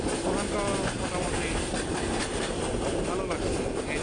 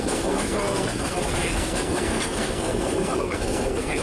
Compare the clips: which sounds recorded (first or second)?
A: first